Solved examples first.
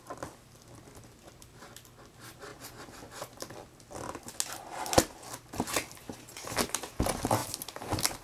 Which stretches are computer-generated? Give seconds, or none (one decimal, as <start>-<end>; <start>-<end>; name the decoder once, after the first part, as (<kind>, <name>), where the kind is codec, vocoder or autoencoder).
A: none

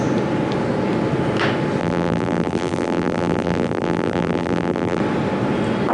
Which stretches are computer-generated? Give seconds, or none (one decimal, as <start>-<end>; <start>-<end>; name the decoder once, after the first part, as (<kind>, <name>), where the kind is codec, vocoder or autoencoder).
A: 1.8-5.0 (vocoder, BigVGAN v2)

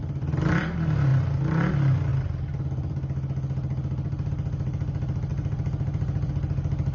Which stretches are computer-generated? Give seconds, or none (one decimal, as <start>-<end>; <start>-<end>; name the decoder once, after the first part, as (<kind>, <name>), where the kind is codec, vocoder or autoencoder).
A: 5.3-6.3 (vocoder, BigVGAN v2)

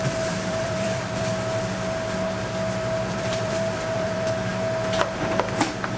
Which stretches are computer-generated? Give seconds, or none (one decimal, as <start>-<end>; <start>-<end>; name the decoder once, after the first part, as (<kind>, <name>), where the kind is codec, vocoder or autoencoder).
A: 0.0-1.3 (vocoder, BigVGAN v2); 3.1-4.5

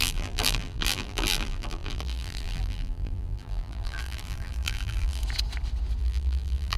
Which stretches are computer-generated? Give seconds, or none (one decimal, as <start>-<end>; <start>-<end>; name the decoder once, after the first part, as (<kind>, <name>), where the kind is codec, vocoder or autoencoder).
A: 0.0-5.2 (vocoder, BigVGAN v2); 6.0-6.8

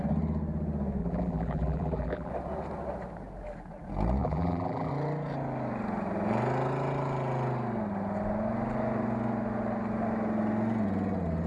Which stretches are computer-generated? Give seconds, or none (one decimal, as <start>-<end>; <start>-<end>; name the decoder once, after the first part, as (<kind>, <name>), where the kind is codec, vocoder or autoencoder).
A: 1.0-2.3 (vocoder, BigVGAN v2); 4.2-4.9

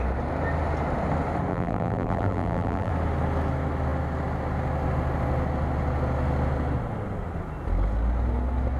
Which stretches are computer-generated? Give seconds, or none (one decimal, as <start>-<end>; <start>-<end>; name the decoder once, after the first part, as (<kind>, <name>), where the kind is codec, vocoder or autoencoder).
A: 1.5-2.9 (vocoder, BigVGAN v2)